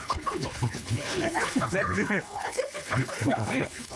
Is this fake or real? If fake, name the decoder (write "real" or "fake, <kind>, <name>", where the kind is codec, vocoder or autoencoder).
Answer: fake, codec, HILCodec